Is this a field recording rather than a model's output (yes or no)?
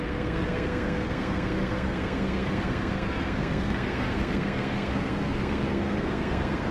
no